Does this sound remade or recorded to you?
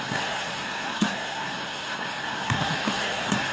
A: remade